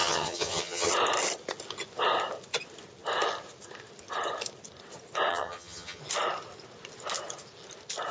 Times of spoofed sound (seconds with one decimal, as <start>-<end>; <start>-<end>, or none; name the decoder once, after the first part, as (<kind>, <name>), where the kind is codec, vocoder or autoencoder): 0.0-0.9 (vocoder, HiFi-GAN); 5.3-6.0